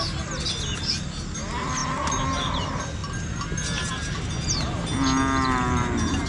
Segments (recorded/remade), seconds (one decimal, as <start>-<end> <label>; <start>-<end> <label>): 0.0-6.3 recorded